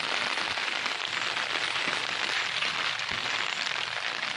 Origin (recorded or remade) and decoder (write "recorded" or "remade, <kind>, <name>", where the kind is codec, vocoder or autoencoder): recorded